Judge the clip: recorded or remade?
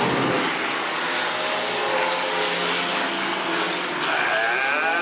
recorded